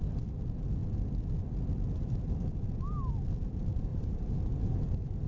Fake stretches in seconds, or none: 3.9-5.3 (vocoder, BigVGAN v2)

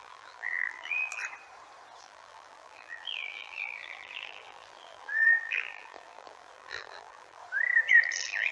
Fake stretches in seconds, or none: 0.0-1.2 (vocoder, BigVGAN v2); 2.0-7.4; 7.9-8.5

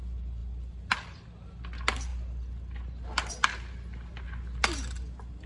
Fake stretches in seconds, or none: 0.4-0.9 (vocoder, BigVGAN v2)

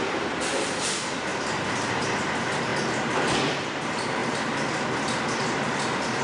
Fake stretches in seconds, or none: none

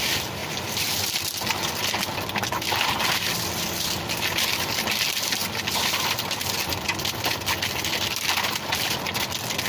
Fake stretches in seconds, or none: 0.4-1.2 (vocoder, BigVGAN v2)

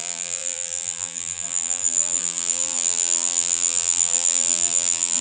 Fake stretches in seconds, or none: 0.0-5.2 (vocoder, BigVGAN v2)